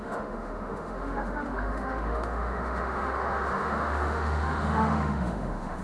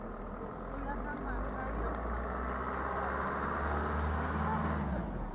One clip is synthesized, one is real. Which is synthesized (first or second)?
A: first